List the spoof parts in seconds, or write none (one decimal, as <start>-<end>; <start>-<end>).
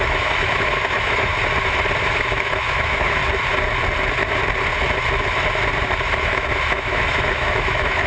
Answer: 0.0-1.3; 2.0-3.2; 6.2-8.1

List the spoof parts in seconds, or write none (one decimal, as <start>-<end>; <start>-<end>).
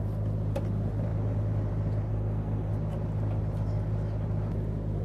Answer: 2.1-2.7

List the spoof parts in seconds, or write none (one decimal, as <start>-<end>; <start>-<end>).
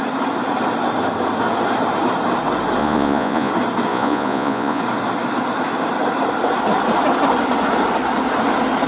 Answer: 2.8-3.5; 3.9-4.8